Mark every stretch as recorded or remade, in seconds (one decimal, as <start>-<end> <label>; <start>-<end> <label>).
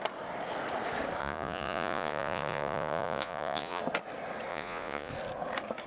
0.0-1.2 recorded; 1.2-3.8 remade; 3.8-4.5 recorded; 4.5-5.1 remade; 5.1-5.9 recorded